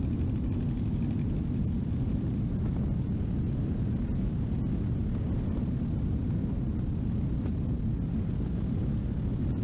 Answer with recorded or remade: recorded